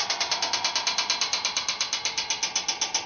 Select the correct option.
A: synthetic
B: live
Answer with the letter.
B